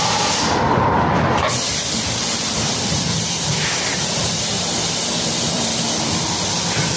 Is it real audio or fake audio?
fake